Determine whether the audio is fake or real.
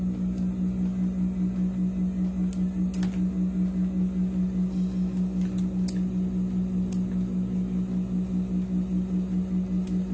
real